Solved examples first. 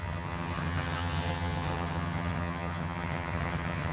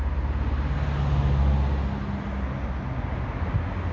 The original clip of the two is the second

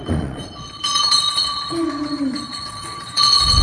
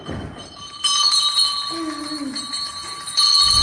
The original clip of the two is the second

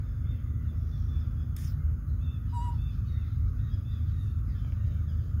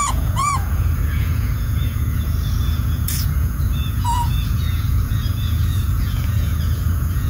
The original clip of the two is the first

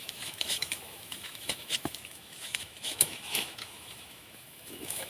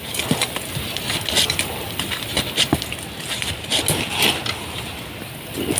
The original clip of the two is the second